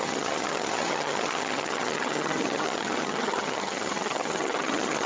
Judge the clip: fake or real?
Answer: fake